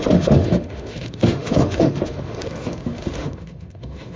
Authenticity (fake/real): fake